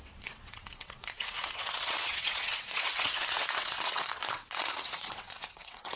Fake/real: fake